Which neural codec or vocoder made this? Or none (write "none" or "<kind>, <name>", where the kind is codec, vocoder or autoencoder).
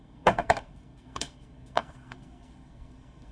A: codec, SNAC